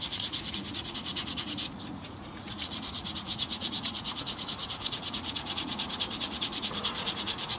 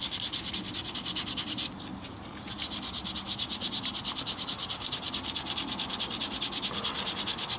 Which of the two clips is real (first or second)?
second